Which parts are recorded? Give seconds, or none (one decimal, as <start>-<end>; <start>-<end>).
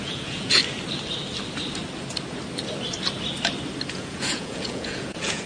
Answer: 0.6-3.9